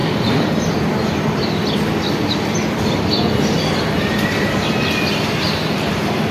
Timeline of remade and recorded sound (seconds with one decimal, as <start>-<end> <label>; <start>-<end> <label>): 0.0-6.3 recorded